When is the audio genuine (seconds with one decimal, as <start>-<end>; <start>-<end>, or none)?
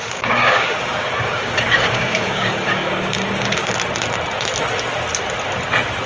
3.7-6.1